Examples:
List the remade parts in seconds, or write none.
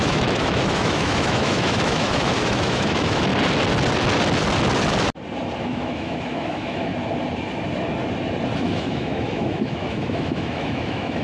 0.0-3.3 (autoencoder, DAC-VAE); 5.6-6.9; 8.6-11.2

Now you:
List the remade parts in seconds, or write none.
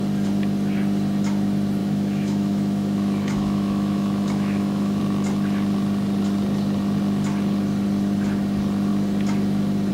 1.8-5.0 (autoencoder, DAC-VAE)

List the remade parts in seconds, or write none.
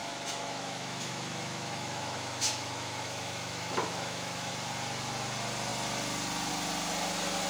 0.0-4.5 (autoencoder, DAC-VAE)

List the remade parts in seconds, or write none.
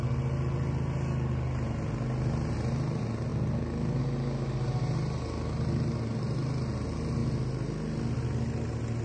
none